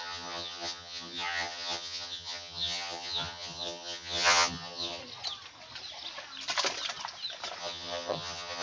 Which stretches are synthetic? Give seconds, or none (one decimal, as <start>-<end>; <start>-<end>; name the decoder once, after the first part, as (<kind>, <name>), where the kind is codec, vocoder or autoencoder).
0.0-5.0 (vocoder, HiFi-GAN); 7.6-8.6